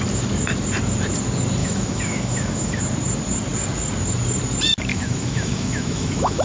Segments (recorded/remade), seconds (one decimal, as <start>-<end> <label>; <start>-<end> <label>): 0.0-1.6 recorded; 1.6-2.8 remade; 2.8-4.9 recorded; 4.9-6.4 remade